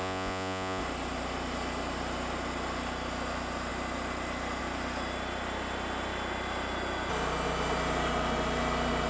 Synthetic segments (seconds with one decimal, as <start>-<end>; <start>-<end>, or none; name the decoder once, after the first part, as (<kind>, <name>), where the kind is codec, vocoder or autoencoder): 0.0-0.8 (vocoder, Vocos)